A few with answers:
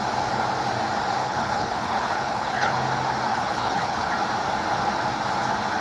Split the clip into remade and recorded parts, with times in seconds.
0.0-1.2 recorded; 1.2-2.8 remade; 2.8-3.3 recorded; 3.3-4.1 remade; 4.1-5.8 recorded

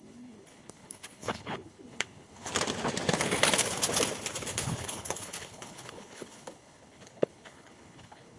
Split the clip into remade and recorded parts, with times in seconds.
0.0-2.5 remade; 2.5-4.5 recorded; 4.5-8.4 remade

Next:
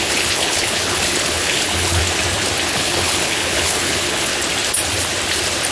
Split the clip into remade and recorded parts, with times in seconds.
0.0-2.0 remade; 2.0-2.7 recorded; 2.7-4.3 remade; 4.3-5.7 recorded

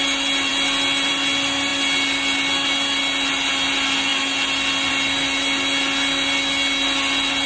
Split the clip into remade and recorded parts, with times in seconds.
0.0-7.5 recorded

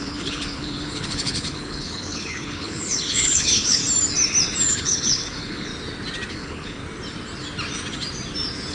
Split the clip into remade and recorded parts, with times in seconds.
0.0-3.8 remade; 3.8-4.7 recorded; 4.7-5.7 remade; 5.7-6.3 recorded; 6.3-6.8 remade; 6.8-8.7 recorded

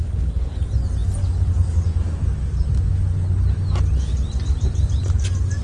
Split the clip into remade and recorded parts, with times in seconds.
0.0-0.6 remade; 0.6-5.6 recorded